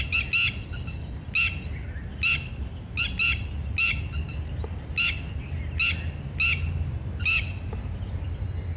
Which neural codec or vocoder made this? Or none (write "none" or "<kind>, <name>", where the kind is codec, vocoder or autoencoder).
none